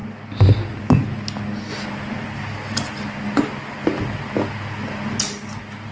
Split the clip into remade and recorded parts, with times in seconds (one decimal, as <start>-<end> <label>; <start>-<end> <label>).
0.0-5.9 recorded